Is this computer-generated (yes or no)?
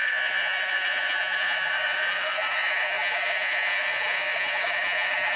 yes